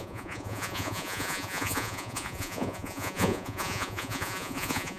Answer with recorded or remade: remade